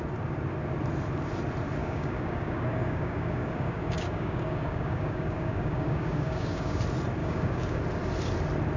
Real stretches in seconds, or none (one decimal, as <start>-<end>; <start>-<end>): 0.0-1.8; 6.8-7.2; 7.8-8.8